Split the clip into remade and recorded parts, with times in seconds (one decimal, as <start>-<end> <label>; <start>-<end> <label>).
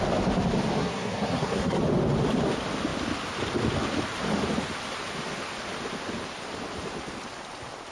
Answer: 0.0-0.8 recorded; 0.8-1.8 remade; 1.8-7.9 recorded